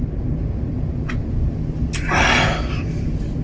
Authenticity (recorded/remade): recorded